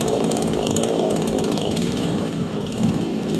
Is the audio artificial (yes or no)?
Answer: yes